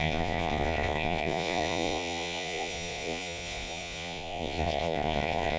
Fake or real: fake